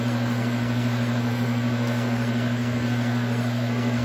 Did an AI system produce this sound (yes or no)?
yes